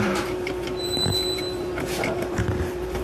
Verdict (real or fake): fake